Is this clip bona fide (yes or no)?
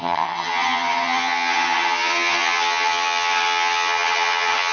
no